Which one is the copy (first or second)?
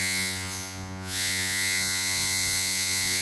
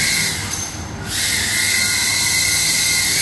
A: first